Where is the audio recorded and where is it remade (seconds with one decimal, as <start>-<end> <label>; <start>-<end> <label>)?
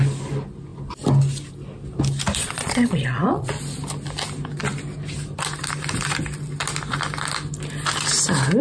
0.0-2.4 recorded; 2.4-3.6 remade; 3.6-8.6 recorded